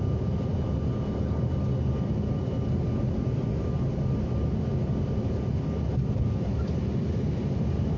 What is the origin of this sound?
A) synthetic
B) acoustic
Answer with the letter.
B